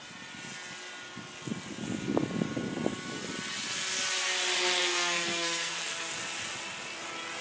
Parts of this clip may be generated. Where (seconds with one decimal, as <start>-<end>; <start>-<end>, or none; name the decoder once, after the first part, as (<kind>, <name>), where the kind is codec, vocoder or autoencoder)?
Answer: 4.8-6.1 (codec, SNAC)